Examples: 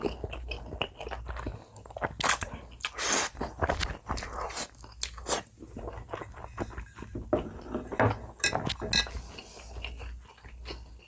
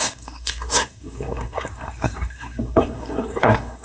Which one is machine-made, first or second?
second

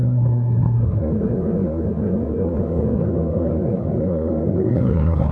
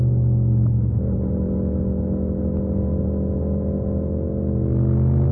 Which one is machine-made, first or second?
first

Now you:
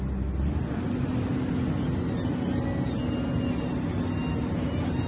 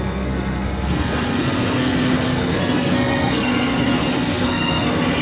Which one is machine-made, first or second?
second